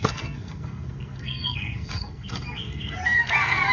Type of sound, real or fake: fake